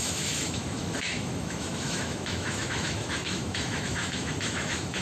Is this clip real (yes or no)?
no